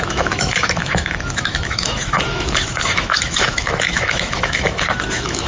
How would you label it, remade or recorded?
remade